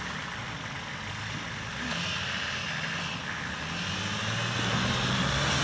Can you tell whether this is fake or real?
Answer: real